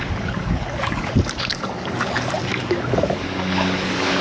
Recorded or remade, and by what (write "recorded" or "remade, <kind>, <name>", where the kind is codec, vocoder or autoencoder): remade, codec, DAC